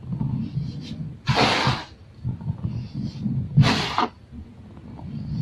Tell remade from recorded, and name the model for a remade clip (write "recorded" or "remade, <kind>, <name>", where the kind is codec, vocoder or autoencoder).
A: recorded